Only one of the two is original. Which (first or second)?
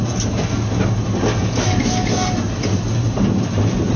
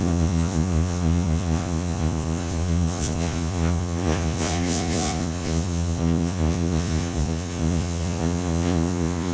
first